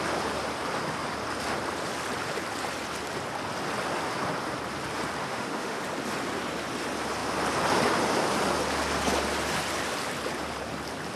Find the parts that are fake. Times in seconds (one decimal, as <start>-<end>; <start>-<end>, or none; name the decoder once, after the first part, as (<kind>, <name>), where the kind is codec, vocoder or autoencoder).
5.2-5.8 (autoencoder, DAC-VAE)